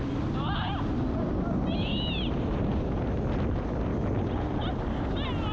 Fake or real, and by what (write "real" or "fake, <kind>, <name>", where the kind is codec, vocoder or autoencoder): real